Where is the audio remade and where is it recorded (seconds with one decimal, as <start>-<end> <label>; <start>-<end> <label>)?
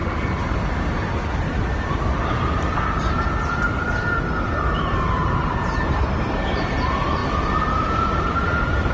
0.0-4.4 recorded; 4.4-8.9 remade